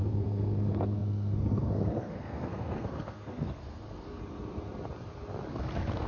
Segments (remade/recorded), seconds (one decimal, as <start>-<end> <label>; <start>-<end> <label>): 0.0-4.2 remade; 4.2-5.5 recorded; 5.5-6.1 remade